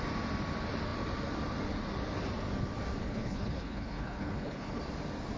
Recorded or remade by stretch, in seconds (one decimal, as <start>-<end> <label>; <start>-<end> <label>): 0.0-3.0 recorded; 3.0-4.8 remade; 4.8-5.4 recorded